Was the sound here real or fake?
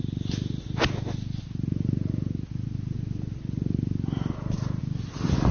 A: real